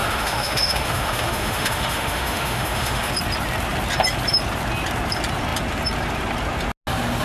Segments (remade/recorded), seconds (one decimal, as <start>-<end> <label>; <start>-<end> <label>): 0.0-3.1 remade; 3.1-7.2 recorded